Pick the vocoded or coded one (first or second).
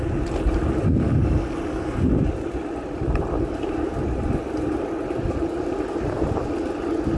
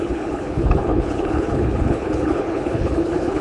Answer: second